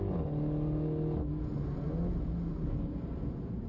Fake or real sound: real